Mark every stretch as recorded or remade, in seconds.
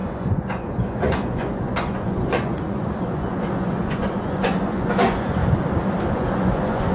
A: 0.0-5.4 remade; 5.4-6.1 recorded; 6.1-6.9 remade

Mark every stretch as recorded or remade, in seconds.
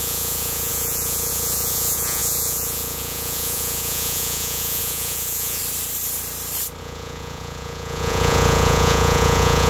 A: 0.0-5.6 remade; 5.6-6.8 recorded; 6.8-9.7 remade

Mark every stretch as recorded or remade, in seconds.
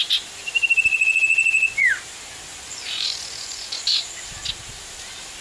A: 0.0-0.9 recorded; 0.9-1.9 remade; 1.9-2.5 recorded; 2.5-4.1 remade; 4.1-5.4 recorded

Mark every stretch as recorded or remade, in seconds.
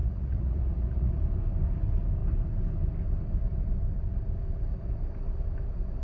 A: 0.0-1.1 remade; 1.1-6.0 recorded